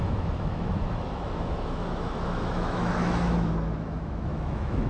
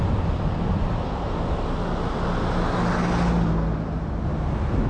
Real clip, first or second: second